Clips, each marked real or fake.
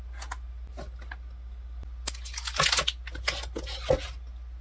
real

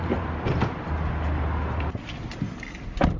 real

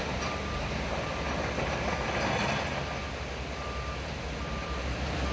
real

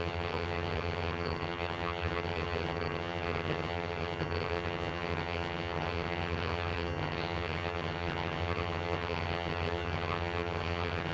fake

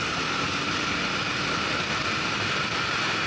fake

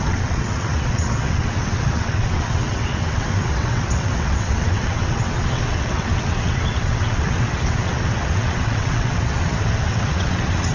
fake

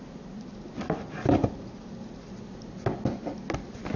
real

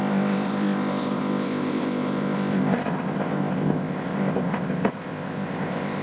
fake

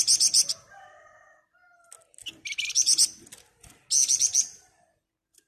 real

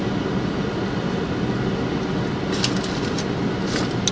real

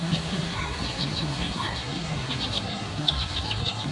fake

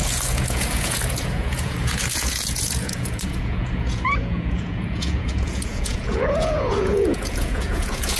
fake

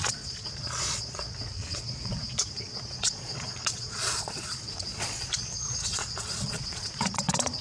fake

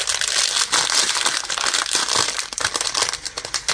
real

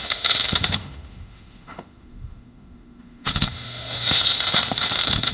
fake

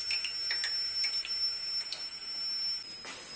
real